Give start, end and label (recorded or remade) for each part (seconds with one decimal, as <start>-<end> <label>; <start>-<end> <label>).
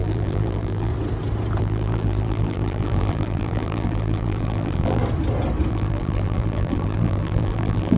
0.0-0.9 remade; 0.9-1.6 recorded; 1.6-5.0 remade; 5.0-5.7 recorded; 5.7-8.0 remade